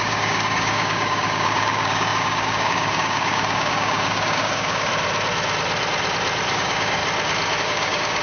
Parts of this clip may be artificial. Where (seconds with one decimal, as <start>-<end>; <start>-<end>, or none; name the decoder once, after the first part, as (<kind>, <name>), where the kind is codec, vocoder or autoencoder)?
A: 0.0-4.9 (codec, DAC); 6.5-7.0; 7.6-8.2